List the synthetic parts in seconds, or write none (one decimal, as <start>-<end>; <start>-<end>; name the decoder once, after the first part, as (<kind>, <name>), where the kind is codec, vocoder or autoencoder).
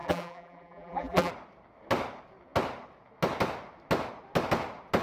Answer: 0.0-1.3 (vocoder, BigVGAN v2)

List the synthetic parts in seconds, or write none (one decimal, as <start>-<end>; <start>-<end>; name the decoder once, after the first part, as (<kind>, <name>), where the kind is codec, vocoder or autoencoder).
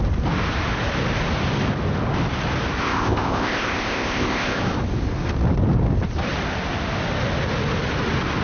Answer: 2.8-4.6 (codec, ZipCodec)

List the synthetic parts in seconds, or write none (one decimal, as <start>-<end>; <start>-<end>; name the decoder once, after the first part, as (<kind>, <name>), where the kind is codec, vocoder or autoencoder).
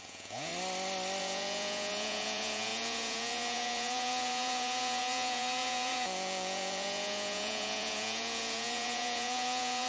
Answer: 0.0-0.5 (vocoder, Vocos); 1.2-9.9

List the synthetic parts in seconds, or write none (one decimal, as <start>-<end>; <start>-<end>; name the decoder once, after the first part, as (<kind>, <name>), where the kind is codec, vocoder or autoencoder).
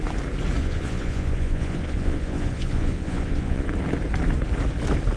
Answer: 0.6-3.7 (vocoder, Vocos)